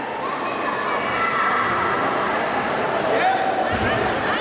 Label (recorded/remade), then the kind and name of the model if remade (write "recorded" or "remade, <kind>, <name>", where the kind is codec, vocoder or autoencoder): recorded